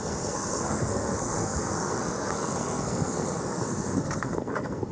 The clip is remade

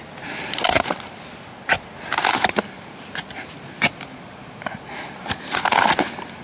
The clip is recorded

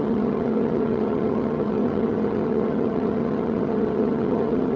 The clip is remade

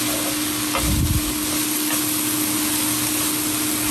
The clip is recorded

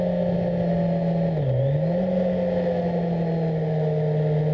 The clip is recorded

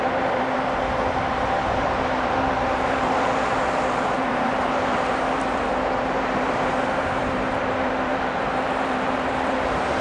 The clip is remade